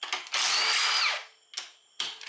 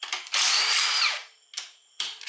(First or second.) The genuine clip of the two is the first